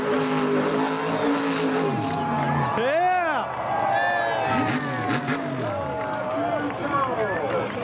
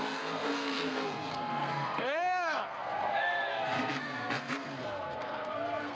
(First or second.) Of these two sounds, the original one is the first